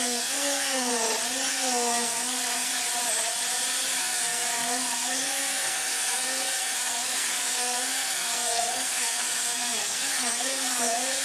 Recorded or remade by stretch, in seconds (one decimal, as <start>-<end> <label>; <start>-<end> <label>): 0.0-0.9 remade; 0.9-1.5 recorded; 1.5-2.7 remade; 2.7-4.0 recorded; 4.0-11.2 remade